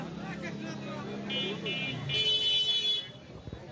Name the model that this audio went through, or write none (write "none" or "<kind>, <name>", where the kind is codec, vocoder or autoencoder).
none